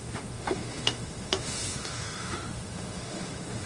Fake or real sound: fake